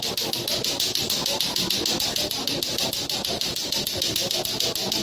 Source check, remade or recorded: recorded